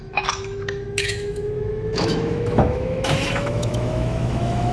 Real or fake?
fake